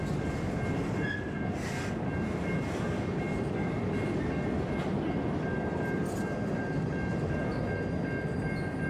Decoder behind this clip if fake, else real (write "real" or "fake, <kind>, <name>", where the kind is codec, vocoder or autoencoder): real